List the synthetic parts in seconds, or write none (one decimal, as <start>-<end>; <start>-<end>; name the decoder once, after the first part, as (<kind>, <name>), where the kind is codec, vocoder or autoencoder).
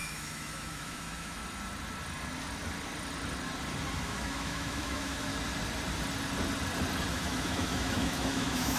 0.0-1.4 (autoencoder, DAC-VAE); 4.0-5.3; 7.1-8.8